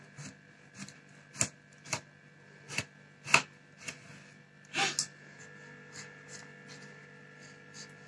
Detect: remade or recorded recorded